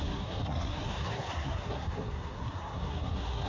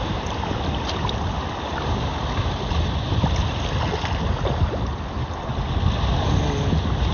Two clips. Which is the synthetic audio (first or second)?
first